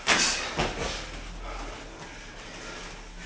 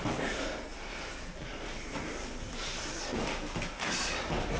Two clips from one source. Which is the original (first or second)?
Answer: first